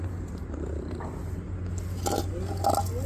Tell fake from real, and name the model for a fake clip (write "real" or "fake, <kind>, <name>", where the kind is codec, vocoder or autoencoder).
real